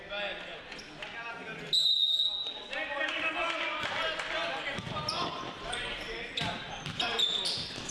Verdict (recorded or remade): recorded